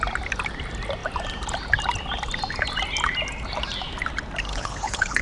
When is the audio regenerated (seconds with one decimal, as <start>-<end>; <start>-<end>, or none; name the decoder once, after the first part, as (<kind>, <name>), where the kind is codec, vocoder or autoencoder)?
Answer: 4.5-5.2 (codec, HILCodec)